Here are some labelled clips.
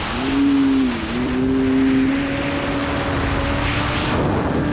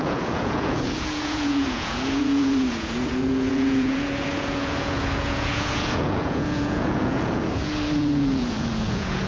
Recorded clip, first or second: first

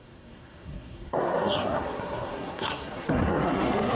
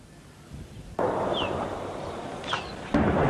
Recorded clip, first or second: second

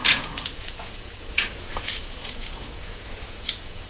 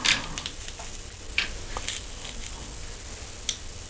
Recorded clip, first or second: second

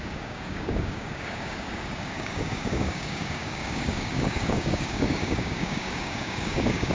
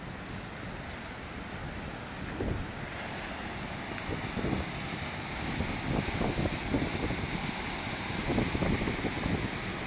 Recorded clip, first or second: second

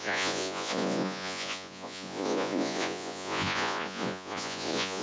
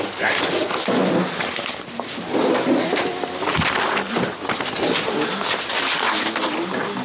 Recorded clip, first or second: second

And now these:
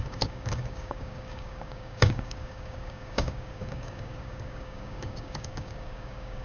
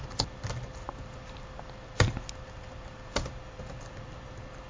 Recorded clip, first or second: second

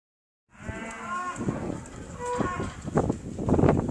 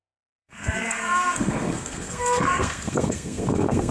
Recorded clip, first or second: first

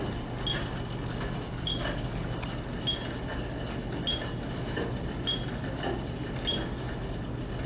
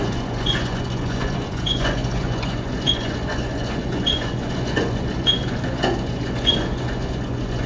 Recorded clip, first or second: first